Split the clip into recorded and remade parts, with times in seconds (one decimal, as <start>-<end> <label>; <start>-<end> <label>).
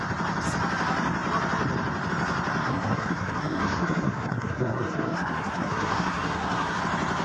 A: 0.0-2.6 recorded; 2.6-6.8 remade; 6.8-7.2 recorded